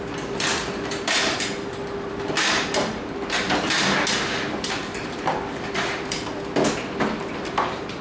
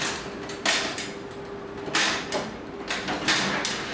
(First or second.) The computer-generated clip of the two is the first